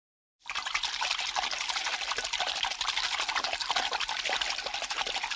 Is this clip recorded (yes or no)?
yes